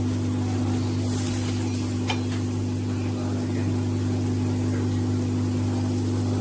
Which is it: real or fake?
real